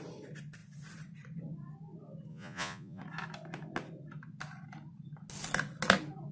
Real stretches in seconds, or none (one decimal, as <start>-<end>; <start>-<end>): 0.0-2.3; 3.0-6.3